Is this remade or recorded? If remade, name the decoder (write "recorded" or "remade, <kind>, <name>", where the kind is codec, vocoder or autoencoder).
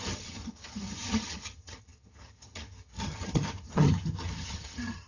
remade, vocoder, HiFi-GAN